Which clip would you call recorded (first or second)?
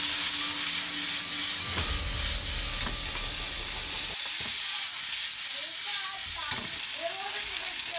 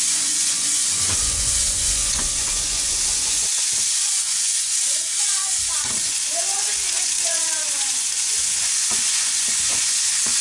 first